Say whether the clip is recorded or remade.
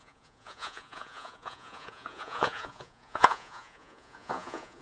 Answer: remade